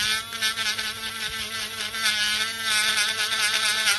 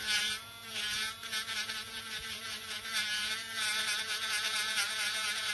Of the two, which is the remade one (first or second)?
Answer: second